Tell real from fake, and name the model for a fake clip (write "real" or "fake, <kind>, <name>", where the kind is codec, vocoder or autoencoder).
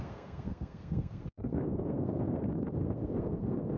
fake, codec, SNAC